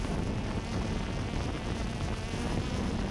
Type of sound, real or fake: real